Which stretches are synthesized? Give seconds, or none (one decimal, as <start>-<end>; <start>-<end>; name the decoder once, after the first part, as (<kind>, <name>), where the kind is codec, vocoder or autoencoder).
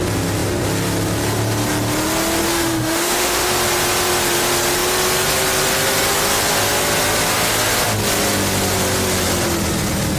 2.5-3.5 (autoencoder, DAC-VAE)